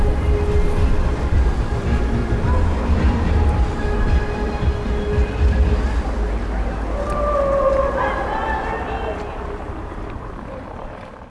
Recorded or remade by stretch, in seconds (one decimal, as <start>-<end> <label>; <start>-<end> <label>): 0.0-2.2 recorded; 2.2-4.7 remade; 4.7-9.8 recorded; 9.8-10.9 remade; 10.9-11.3 recorded